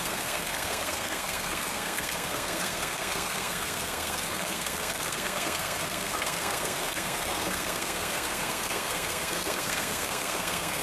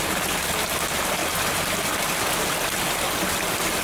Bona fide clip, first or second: second